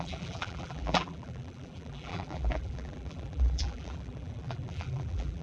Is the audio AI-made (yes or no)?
yes